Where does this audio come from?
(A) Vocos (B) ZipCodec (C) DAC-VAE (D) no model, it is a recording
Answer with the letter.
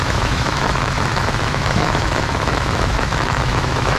C